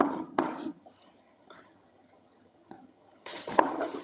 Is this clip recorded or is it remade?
remade